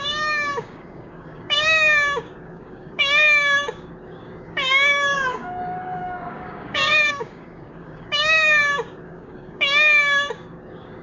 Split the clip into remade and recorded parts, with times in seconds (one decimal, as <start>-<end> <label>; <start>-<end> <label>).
0.0-11.0 remade